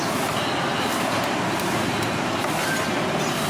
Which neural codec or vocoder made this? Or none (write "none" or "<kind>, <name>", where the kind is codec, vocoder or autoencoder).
none